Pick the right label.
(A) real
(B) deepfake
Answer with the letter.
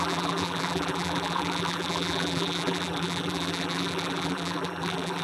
B